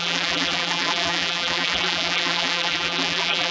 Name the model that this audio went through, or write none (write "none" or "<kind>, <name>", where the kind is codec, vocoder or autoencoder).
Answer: vocoder, BigVGAN v2